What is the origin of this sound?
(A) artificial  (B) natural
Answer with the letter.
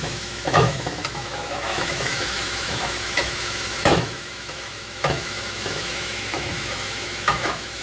A